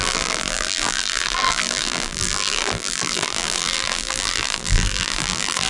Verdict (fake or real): fake